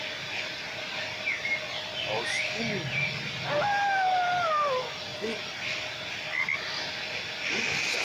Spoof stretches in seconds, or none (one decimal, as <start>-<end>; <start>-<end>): 5.1-5.6